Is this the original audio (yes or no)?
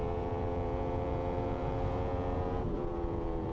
no